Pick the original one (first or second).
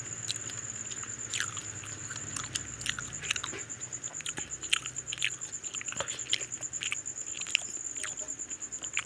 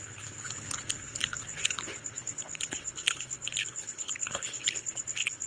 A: first